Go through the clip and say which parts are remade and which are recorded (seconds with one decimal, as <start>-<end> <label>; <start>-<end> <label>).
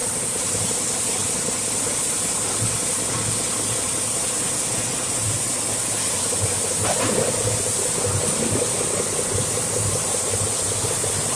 0.0-0.7 remade; 0.7-11.4 recorded